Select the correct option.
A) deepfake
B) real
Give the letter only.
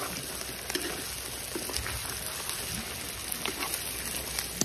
B